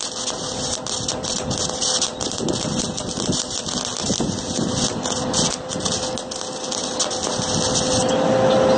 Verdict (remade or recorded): recorded